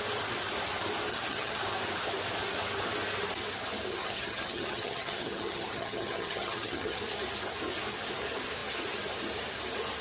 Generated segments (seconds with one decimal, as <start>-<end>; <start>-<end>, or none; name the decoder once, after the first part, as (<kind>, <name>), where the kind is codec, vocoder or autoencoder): 1.1-1.6 (vocoder, HiFi-GAN); 3.9-7.0